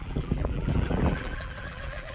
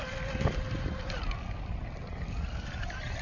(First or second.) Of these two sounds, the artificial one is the first